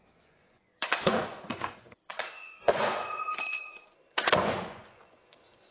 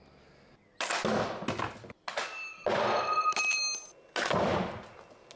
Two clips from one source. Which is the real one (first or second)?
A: second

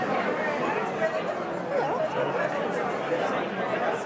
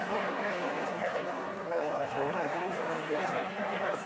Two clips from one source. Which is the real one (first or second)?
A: first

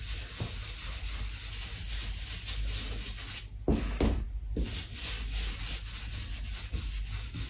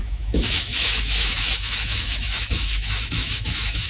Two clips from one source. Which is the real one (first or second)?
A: first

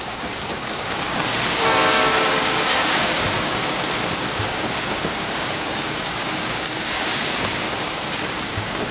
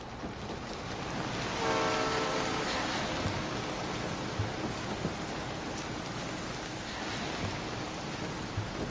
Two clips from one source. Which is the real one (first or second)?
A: second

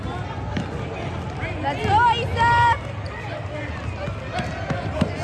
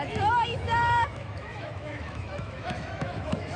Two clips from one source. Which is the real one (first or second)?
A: first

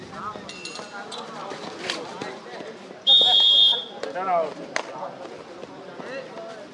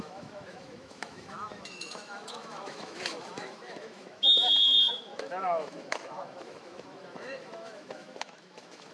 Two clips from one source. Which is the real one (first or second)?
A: first